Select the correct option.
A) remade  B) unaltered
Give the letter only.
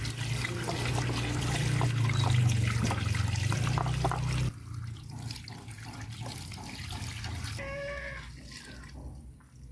B